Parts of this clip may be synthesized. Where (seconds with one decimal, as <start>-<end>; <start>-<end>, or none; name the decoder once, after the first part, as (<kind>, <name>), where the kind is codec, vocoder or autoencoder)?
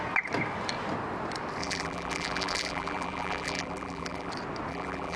1.6-4.3 (vocoder, BigVGAN v2); 4.7-5.2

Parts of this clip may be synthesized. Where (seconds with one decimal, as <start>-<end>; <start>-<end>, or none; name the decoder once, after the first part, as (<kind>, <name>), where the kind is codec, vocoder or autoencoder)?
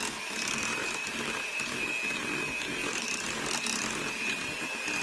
0.8-1.9 (vocoder, BigVGAN v2); 2.8-3.4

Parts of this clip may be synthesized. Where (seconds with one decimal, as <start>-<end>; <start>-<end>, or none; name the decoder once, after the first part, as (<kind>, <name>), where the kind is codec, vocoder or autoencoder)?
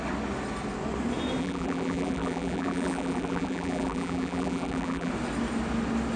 1.4-5.1 (vocoder, BigVGAN v2)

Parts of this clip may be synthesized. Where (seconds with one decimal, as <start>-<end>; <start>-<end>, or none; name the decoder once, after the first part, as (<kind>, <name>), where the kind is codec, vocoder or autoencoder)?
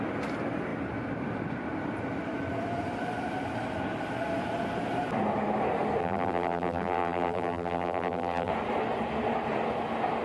6.0-8.5 (vocoder, BigVGAN v2)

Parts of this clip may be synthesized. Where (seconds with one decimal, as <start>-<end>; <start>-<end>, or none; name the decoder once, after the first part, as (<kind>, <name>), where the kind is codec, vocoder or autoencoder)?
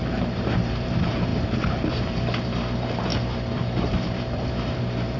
0.0-3.1 (vocoder, BigVGAN v2); 3.8-5.2